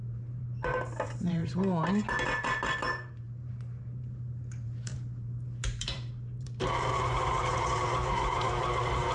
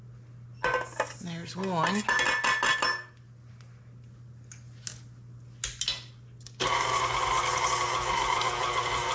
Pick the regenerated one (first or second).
first